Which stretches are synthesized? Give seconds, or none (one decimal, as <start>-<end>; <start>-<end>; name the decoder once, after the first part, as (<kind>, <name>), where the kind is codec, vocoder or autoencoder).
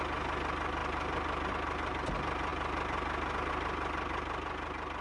none